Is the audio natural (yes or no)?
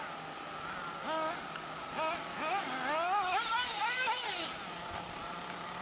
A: yes